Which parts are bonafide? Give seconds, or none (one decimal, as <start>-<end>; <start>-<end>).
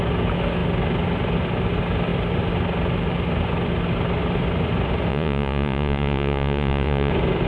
0.0-5.1; 7.1-7.5